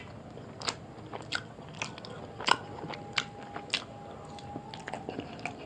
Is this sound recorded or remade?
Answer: recorded